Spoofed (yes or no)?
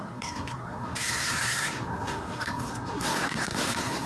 yes